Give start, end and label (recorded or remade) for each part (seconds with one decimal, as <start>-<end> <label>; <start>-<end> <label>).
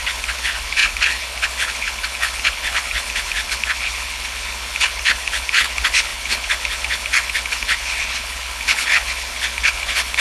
0.0-10.2 remade